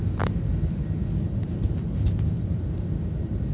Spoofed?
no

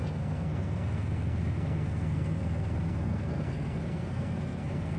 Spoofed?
yes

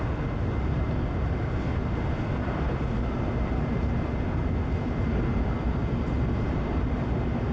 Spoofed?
no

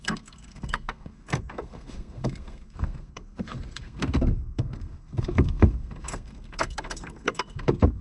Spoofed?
yes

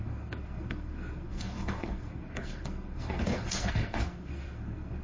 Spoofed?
yes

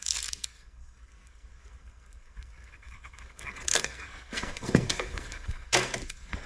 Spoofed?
yes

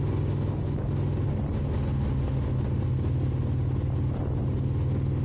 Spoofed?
no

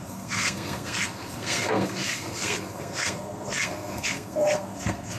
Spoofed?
yes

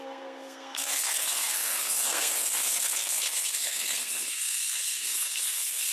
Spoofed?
yes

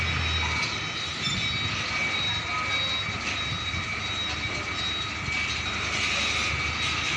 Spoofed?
no